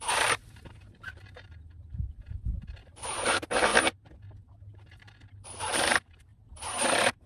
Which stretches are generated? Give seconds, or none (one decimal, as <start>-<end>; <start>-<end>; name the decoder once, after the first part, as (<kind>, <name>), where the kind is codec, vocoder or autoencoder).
0.0-3.7 (vocoder, BigVGAN v2); 4.6-6.3